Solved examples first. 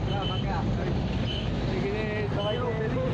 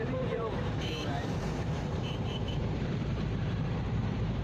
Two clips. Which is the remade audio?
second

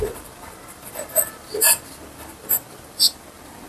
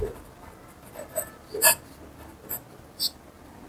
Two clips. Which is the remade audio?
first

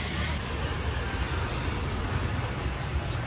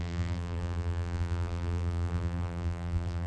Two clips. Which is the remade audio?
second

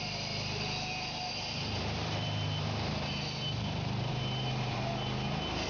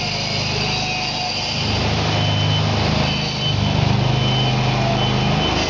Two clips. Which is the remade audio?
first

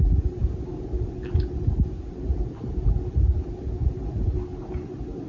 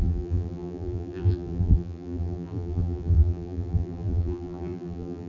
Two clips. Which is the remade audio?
second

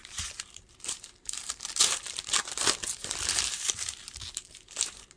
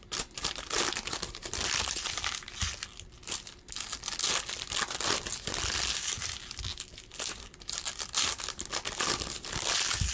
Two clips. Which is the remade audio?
first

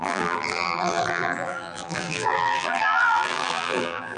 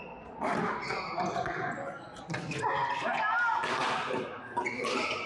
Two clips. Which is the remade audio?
first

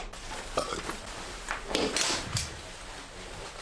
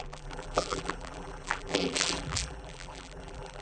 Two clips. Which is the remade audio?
second